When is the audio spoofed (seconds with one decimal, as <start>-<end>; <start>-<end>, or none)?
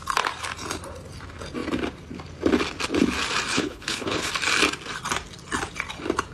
3.5-4.3